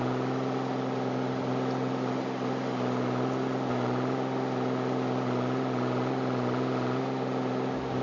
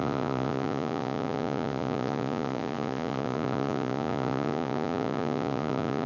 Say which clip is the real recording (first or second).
first